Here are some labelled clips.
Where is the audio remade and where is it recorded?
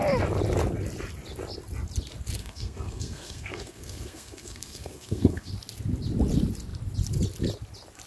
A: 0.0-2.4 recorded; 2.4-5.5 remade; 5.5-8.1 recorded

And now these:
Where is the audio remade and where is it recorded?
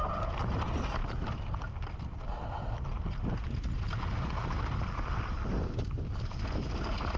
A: 0.0-7.2 recorded